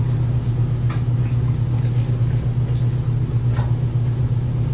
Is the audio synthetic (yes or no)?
no